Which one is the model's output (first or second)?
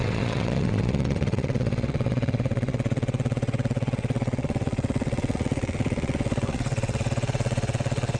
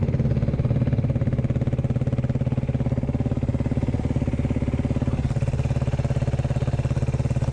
first